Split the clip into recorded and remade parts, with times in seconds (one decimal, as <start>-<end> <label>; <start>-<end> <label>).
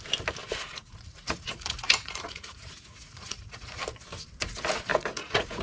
0.0-0.4 recorded; 0.4-3.8 remade; 3.8-4.9 recorded; 4.9-5.6 remade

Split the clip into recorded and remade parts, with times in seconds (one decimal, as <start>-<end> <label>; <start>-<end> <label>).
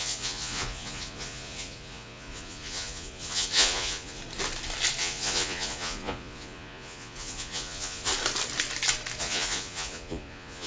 0.0-4.2 remade; 4.2-5.0 recorded; 5.0-8.1 remade; 8.1-9.2 recorded; 9.2-10.7 remade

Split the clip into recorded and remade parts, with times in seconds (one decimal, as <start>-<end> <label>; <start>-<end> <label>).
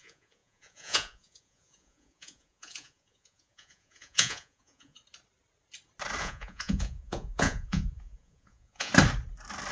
0.0-5.0 remade; 5.0-6.2 recorded; 6.2-8.9 remade; 8.9-9.7 recorded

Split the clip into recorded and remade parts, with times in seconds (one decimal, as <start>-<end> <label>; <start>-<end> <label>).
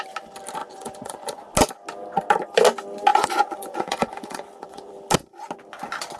0.0-0.6 recorded; 0.6-1.4 remade; 1.4-3.1 recorded; 3.1-4.9 remade; 4.9-6.2 recorded